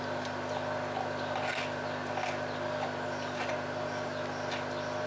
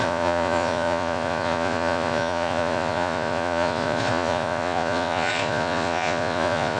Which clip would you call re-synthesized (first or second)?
second